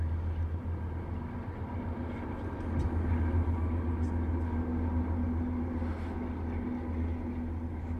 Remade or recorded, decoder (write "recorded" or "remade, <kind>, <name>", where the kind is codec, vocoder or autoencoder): recorded